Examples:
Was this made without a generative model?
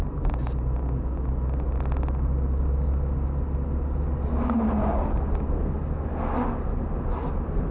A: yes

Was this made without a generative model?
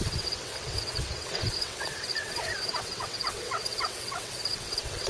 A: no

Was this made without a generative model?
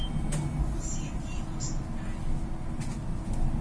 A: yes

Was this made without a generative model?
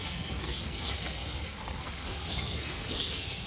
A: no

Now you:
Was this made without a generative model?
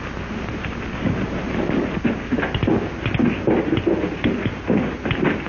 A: yes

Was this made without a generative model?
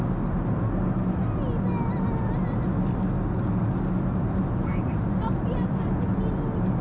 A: yes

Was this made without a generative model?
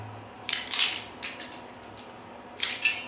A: yes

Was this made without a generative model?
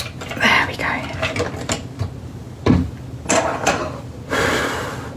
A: yes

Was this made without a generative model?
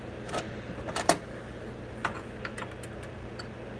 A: yes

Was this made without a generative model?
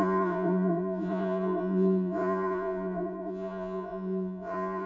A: no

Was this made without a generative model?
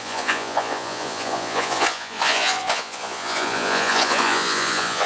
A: no